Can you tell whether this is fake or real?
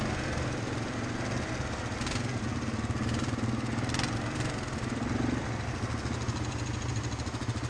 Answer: real